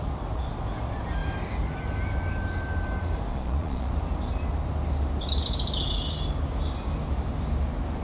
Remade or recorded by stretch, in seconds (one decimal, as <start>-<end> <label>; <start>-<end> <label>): 0.0-3.3 recorded; 3.3-3.9 remade; 3.9-8.0 recorded